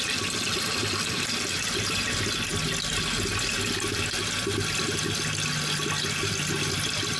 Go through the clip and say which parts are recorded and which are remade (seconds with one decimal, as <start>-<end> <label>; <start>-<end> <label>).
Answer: 0.0-7.2 recorded